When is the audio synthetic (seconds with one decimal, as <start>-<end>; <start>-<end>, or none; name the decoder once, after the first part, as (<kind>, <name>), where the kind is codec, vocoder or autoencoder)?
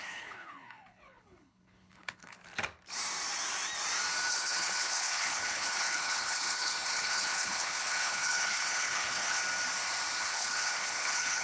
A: 0.0-2.4 (codec, HILCodec); 4.3-9.4; 10.2-11.4